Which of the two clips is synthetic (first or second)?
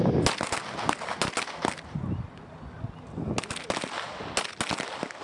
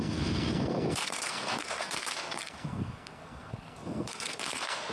second